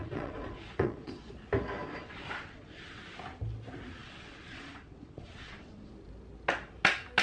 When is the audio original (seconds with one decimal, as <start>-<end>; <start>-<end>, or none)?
1.3-1.8; 3.0-4.0; 5.9-7.2